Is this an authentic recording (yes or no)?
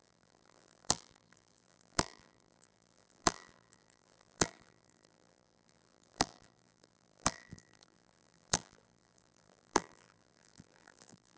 no